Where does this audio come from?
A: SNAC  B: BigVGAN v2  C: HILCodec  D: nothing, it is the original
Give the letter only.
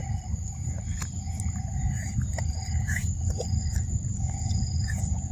B